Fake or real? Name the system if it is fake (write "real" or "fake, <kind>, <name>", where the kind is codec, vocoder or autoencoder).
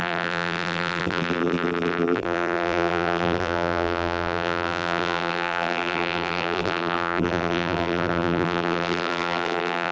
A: fake, vocoder, BigVGAN v2